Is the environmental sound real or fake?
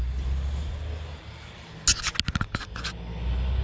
real